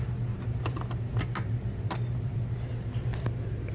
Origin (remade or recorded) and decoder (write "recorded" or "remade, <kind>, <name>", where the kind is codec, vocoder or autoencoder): recorded